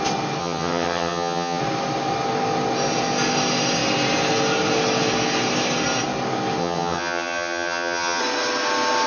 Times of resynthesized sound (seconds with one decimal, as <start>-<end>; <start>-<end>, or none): 0.4-1.6; 6.6-8.2